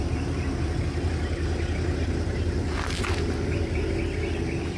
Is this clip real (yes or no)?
yes